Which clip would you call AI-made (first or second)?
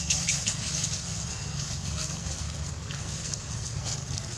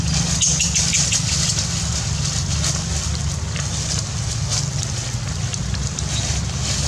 first